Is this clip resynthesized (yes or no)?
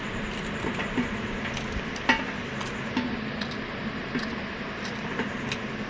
no